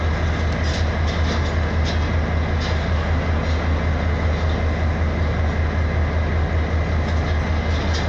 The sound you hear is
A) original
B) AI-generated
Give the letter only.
A